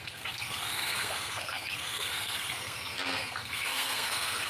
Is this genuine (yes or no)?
no